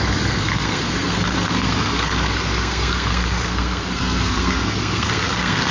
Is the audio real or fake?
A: fake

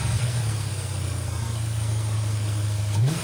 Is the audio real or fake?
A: fake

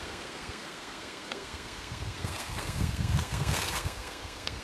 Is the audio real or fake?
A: fake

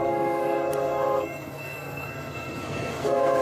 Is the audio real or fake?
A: fake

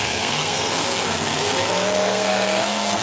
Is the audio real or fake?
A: fake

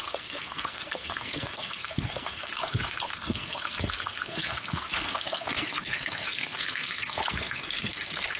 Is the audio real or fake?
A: fake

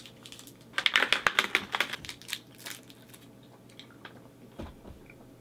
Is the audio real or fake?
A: real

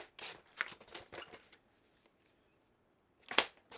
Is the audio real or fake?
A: real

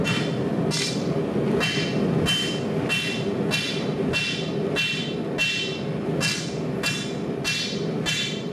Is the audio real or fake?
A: real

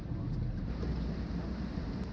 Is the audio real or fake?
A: real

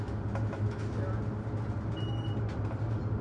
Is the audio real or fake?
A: real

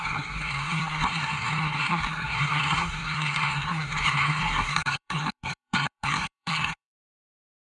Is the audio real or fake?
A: fake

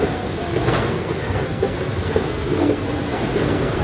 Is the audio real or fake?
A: fake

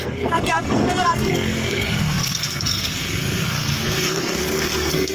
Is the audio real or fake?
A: fake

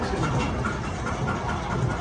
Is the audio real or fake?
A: real